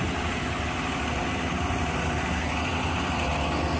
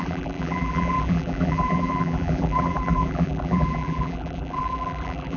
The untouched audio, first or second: first